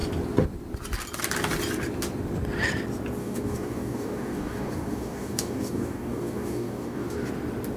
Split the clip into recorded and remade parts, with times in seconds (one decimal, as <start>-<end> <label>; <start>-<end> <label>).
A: 0.0-3.2 recorded; 3.2-7.3 remade; 7.3-7.8 recorded

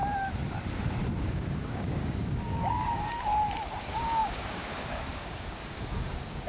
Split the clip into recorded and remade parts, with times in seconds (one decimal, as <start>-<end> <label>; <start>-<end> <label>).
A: 0.0-1.2 recorded; 1.2-3.3 remade; 3.3-3.8 recorded; 3.8-6.5 remade

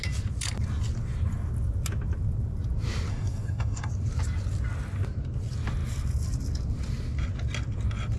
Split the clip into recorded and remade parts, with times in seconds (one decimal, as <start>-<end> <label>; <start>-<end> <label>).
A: 0.0-3.1 recorded; 3.1-3.9 remade; 3.9-8.2 recorded

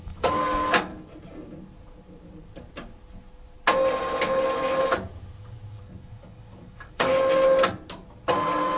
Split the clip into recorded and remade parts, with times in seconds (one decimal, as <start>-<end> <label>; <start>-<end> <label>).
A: 0.0-0.9 remade; 0.9-5.7 recorded; 5.7-7.1 remade; 7.1-8.8 recorded

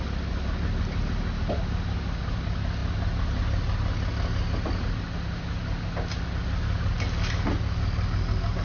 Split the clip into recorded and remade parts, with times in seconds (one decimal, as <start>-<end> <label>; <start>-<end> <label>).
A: 0.0-8.6 recorded